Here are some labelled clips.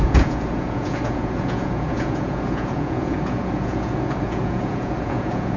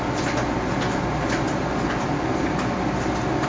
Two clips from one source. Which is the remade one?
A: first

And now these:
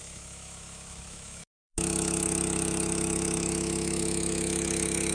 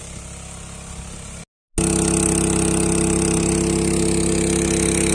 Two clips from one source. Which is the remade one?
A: first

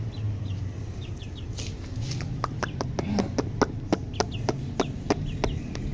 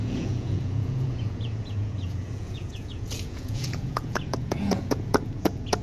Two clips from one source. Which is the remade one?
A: second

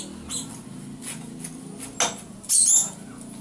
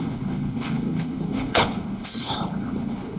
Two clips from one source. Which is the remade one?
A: second